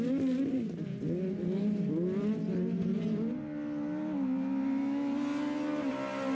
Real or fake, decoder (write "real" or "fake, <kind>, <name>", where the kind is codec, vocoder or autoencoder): real